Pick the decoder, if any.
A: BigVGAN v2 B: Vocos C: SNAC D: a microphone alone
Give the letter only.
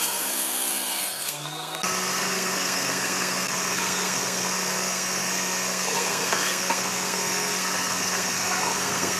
C